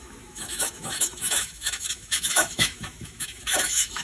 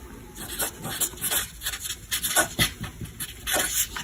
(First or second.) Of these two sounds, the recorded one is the second